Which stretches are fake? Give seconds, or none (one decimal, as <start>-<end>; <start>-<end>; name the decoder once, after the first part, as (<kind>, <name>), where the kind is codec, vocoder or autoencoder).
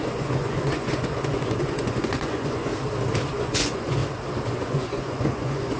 0.0-2.7 (vocoder, Vocos); 3.3-4.0; 4.5-5.8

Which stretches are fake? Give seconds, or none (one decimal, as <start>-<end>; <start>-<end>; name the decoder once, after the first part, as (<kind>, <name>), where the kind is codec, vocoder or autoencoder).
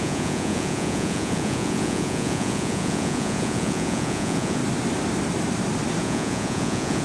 0.0-4.6 (vocoder, Vocos); 6.0-7.0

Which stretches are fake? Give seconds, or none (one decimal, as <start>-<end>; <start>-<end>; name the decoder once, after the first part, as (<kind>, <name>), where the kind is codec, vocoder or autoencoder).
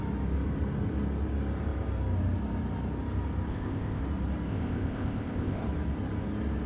3.5-4.0 (codec, ZipCodec); 4.5-5.6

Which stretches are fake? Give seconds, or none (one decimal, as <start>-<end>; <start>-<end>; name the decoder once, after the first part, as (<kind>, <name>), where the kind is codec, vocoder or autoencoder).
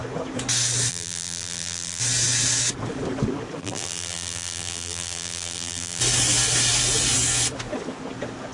0.9-2.0 (vocoder, BigVGAN v2); 3.6-6.0